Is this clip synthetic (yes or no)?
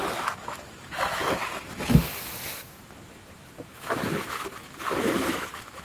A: yes